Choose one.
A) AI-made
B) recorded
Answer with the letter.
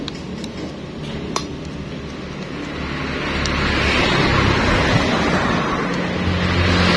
B